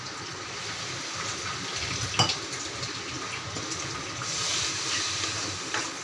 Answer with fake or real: real